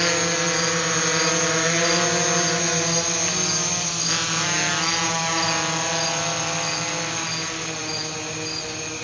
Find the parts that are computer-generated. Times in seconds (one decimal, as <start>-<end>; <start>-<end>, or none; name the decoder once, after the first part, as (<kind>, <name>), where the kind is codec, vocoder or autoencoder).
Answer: none